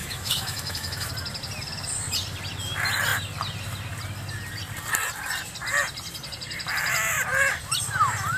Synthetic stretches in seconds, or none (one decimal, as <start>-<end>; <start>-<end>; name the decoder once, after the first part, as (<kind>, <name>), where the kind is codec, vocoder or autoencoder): 0.0-1.1 (autoencoder, DAC-VAE)